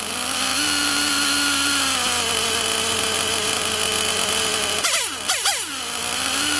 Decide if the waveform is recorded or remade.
recorded